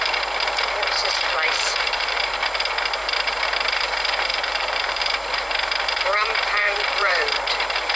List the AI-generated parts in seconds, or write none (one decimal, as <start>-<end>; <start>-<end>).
1.0-2.2; 4.3-5.0; 6.6-7.2